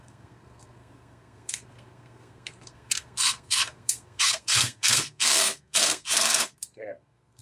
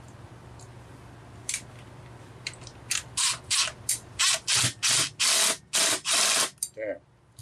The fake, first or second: first